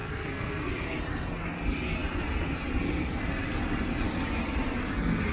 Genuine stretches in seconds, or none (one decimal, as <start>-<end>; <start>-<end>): 0.7-5.3